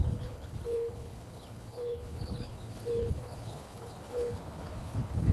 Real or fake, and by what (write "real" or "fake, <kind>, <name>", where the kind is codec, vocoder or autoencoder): fake, codec, HILCodec